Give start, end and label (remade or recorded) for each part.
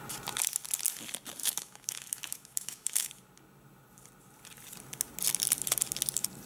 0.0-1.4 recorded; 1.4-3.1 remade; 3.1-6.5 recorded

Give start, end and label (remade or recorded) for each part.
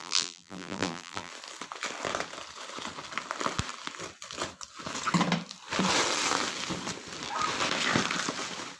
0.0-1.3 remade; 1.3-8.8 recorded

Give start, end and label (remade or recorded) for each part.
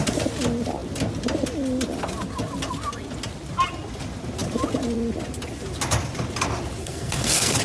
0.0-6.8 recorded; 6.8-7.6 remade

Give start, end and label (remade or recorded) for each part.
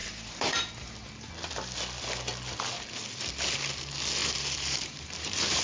0.0-1.3 remade; 1.3-4.2 recorded; 4.2-5.6 remade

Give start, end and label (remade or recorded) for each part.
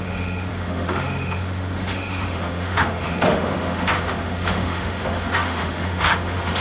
0.0-6.6 remade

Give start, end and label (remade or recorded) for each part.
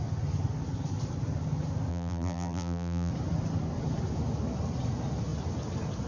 0.0-1.9 recorded; 1.9-3.1 remade; 3.1-6.1 recorded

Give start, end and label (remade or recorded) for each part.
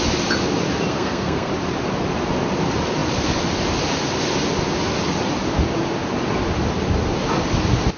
0.0-0.9 recorded; 0.9-1.5 remade; 1.5-8.0 recorded